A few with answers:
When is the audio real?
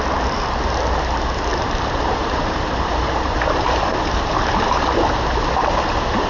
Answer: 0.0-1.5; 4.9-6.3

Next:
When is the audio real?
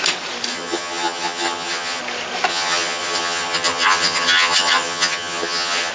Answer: 0.0-0.5; 2.0-2.5